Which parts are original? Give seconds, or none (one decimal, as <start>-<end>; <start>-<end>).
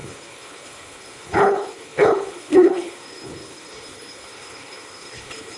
none